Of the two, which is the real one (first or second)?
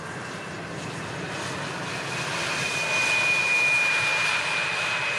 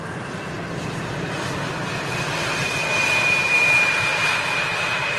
first